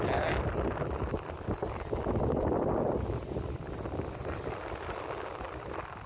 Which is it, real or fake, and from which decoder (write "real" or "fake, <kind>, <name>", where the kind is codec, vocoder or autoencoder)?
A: real